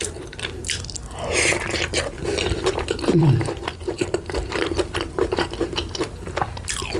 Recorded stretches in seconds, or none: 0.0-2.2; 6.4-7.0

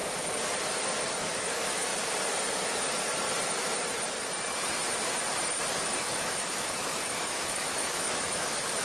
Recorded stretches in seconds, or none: 0.0-1.2; 1.9-5.7

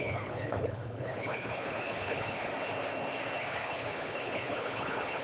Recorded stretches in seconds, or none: 2.5-3.4

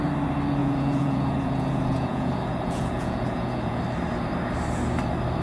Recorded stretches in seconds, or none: 0.0-0.6; 3.8-5.4

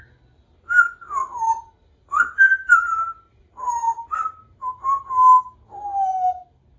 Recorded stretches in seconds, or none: 0.0-1.2; 5.0-6.8